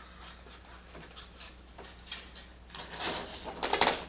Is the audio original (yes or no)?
yes